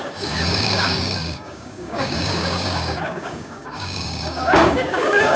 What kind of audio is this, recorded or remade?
remade